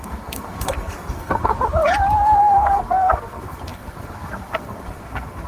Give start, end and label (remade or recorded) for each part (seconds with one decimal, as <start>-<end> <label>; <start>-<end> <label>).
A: 0.0-1.5 remade; 1.5-2.4 recorded; 2.4-5.5 remade